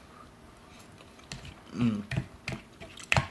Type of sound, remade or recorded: recorded